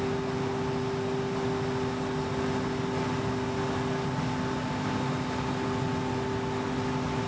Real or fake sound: real